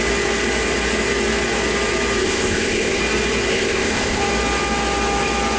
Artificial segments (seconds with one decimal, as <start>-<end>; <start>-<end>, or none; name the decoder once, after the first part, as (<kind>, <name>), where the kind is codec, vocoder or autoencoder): 2.2-3.0 (codec, ZipCodec); 3.5-4.2